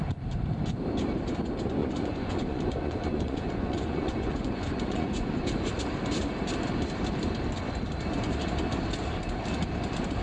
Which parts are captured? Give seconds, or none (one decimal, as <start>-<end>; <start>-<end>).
0.0-1.8; 5.7-10.2